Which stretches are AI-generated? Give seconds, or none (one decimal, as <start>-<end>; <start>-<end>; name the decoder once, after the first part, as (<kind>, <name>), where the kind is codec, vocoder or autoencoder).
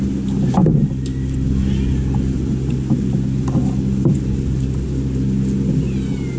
none